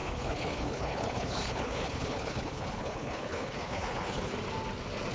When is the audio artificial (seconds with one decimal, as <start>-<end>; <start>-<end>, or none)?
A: 0.0-4.3